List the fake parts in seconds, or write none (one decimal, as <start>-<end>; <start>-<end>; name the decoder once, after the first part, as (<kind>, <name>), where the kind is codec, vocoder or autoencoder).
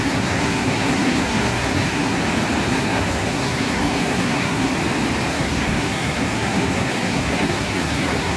0.0-2.2 (codec, SNAC); 2.7-4.7; 5.3-8.4